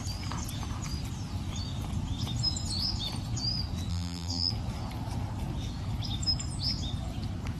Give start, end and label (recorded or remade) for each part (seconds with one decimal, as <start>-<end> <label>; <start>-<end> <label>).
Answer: 0.0-3.9 recorded; 3.9-4.5 remade; 4.5-7.6 recorded